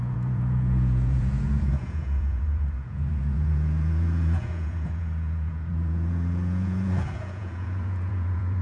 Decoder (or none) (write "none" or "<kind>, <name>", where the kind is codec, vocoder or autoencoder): vocoder, Vocos